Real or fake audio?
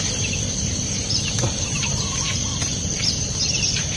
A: fake